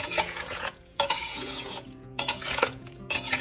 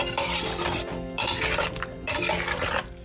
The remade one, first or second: first